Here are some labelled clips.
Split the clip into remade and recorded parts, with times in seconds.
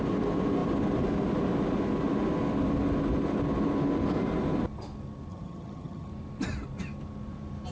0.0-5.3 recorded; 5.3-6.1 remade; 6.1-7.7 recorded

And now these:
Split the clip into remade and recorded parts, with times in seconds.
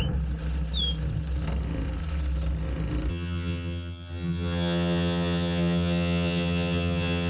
0.0-3.1 recorded; 3.1-7.3 remade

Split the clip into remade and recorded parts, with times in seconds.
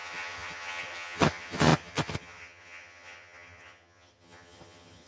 0.0-5.1 remade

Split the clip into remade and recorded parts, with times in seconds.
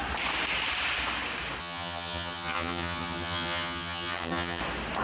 0.0-1.6 recorded; 1.6-4.6 remade; 4.6-5.0 recorded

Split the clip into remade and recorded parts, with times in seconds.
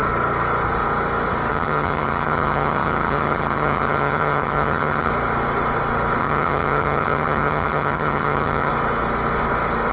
0.0-1.5 recorded; 1.5-5.1 remade; 5.1-6.2 recorded; 6.2-8.7 remade; 8.7-9.9 recorded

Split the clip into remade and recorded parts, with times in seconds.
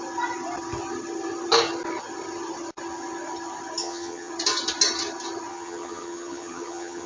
0.0-3.8 recorded; 3.8-4.3 remade; 4.3-5.5 recorded; 5.5-7.1 remade